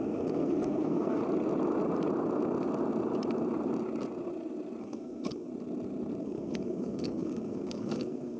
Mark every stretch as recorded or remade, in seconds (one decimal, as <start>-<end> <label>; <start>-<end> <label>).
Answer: 0.0-1.2 remade; 1.2-4.8 recorded; 4.8-5.5 remade; 5.5-6.2 recorded; 6.2-8.4 remade